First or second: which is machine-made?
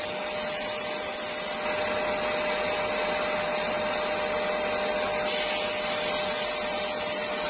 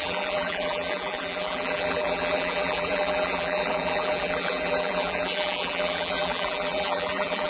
second